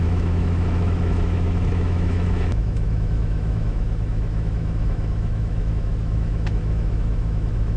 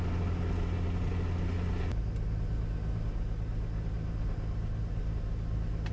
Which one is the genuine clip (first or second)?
second